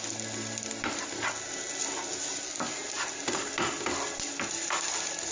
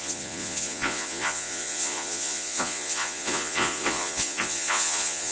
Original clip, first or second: first